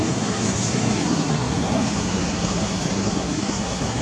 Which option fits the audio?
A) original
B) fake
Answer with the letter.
B